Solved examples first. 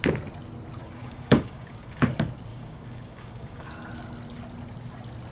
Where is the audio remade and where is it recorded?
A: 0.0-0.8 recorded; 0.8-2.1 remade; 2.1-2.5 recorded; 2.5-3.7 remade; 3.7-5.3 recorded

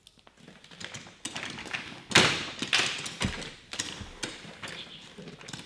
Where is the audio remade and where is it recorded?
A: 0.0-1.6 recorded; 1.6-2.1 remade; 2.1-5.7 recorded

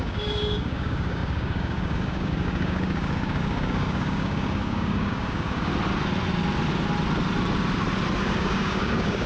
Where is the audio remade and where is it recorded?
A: 0.0-5.7 remade; 5.7-8.2 recorded; 8.2-9.3 remade

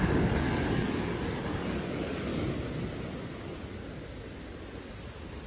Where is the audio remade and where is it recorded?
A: 0.0-2.3 remade; 2.3-5.5 recorded

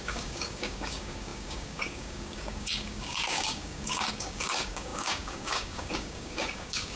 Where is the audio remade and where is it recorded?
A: 0.0-7.0 remade

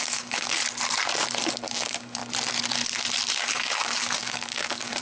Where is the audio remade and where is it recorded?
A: 0.0-0.6 remade; 0.6-1.7 recorded; 1.7-2.2 remade; 2.2-3.4 recorded; 3.4-5.0 remade

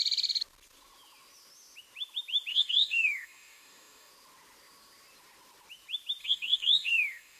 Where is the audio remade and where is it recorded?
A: 0.0-2.5 recorded; 2.5-4.1 remade; 4.1-6.2 recorded; 6.2-7.4 remade